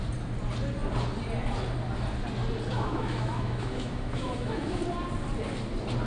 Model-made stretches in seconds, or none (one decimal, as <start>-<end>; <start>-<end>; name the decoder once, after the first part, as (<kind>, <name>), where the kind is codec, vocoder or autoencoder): 2.7-4.8 (autoencoder, DAC-VAE)